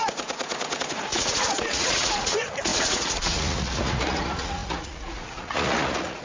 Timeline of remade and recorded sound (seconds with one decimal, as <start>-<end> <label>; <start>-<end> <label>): 0.0-6.2 remade

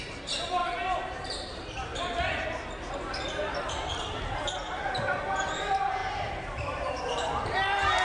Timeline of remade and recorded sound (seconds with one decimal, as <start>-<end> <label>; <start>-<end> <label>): 0.0-0.6 remade; 0.6-1.2 recorded; 1.2-1.9 remade; 1.9-4.8 recorded; 4.8-8.0 remade